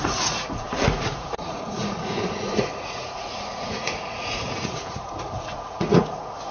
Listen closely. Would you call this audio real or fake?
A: fake